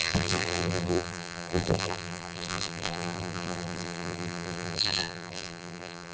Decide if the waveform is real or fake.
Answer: fake